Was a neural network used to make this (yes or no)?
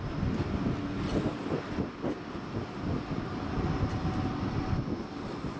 no